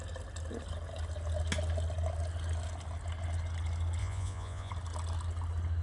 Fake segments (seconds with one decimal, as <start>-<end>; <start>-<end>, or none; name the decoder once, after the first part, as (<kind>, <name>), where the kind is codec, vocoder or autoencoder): 4.0-4.7 (vocoder, Vocos)